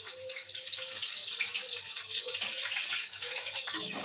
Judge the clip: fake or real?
fake